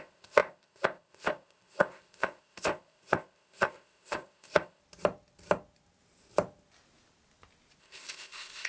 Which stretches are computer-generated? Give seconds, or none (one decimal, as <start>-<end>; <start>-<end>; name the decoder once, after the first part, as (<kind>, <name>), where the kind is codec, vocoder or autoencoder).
0.0-4.8 (codec, ZipCodec); 7.8-8.7